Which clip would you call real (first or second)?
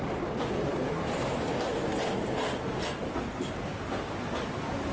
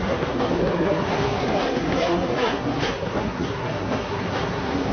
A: first